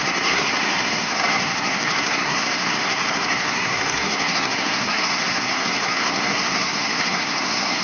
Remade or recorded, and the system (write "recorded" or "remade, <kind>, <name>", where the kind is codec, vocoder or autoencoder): remade, codec, SNAC